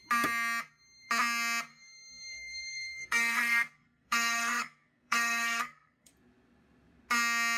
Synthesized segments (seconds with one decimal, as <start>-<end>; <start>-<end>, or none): 1.7-6.1